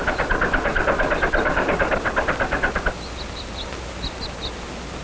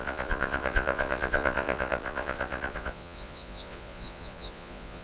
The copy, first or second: second